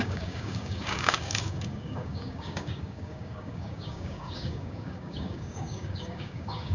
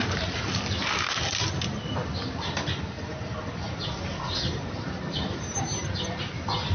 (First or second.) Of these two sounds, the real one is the second